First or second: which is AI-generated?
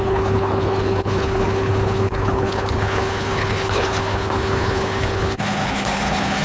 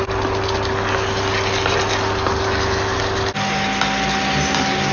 first